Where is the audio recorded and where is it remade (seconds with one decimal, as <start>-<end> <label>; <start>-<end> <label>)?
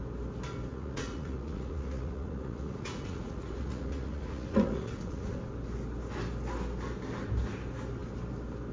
0.0-0.7 recorded; 0.7-5.4 remade; 5.4-8.7 recorded